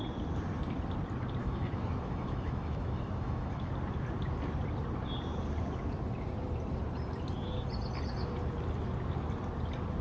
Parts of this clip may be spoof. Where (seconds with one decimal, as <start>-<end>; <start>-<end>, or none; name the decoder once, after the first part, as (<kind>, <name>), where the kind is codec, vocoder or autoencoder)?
1.4-3.7 (autoencoder, DAC-VAE)